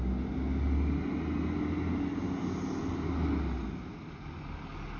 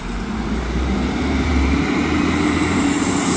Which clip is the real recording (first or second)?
first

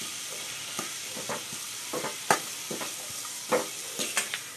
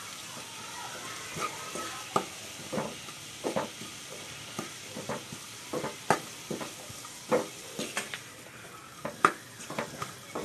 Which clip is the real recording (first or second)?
first